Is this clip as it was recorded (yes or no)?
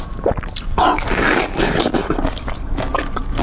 yes